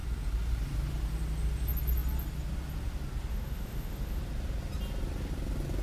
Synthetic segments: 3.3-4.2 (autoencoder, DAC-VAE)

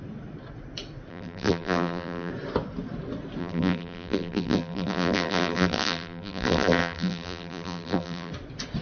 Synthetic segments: 1.1-2.3 (vocoder, BigVGAN v2); 3.4-8.3

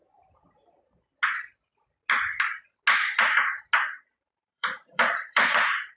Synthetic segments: 4.1-6.0 (vocoder, BigVGAN v2)

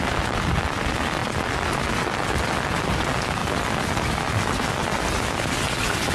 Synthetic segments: none

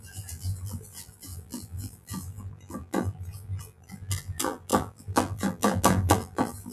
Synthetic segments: 0.0-6.7 (vocoder, BigVGAN v2)

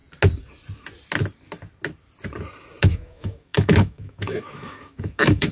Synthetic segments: 2.8-5.5 (autoencoder, DAC-VAE)

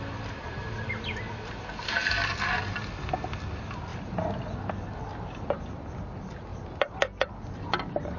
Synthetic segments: 2.0-2.6 (vocoder, BigVGAN v2); 6.5-7.7

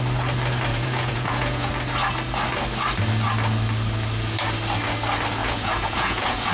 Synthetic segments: 0.7-1.7 (vocoder, Vocos); 5.4-6.5